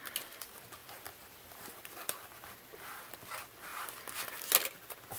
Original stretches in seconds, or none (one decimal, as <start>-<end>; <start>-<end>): 0.0-0.8; 3.1-5.2